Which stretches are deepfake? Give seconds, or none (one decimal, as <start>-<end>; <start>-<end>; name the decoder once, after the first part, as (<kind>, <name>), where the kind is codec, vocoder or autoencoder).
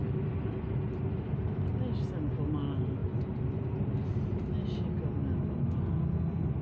0.0-1.7 (vocoder, BigVGAN v2); 3.0-4.5